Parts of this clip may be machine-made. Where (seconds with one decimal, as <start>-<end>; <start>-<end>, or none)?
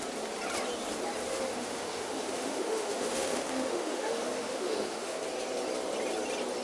1.5-5.2